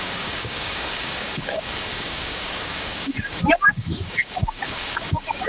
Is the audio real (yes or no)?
no